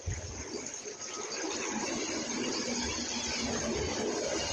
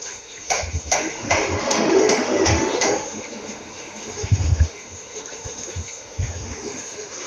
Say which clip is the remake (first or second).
second